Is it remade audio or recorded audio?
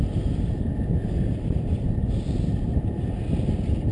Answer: recorded